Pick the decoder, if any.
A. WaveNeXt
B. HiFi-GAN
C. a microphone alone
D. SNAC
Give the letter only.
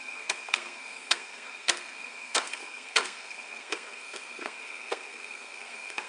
D